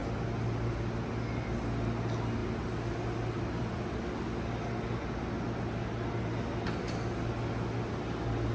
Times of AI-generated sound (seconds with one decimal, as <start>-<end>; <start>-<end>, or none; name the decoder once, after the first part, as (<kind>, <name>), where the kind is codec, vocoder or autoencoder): none